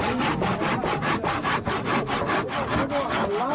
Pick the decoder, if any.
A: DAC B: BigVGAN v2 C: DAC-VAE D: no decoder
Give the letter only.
D